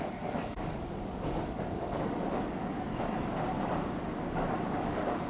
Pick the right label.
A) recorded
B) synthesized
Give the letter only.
B